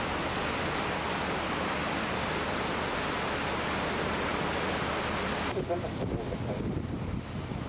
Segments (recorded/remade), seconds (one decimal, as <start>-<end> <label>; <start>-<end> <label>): 0.0-7.7 recorded